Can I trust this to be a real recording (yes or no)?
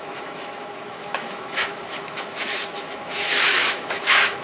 no